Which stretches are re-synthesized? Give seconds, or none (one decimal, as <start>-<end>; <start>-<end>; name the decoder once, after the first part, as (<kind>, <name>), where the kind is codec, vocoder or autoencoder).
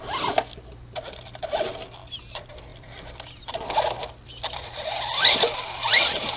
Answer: 0.0-1.7 (vocoder, BigVGAN v2); 2.2-6.4